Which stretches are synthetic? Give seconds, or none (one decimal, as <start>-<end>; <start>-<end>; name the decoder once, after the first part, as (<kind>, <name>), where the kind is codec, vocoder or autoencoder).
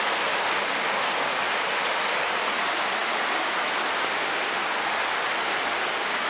none